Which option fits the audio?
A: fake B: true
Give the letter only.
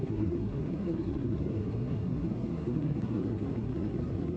A